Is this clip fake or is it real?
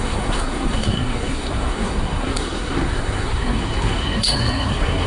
fake